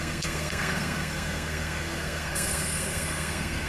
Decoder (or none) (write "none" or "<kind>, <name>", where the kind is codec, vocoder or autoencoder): codec, SNAC